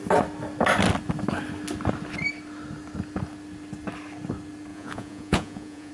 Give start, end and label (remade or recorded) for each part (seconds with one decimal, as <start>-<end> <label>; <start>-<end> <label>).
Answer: 0.0-4.7 recorded; 4.7-5.9 remade